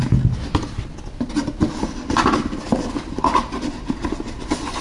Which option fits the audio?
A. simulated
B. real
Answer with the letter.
B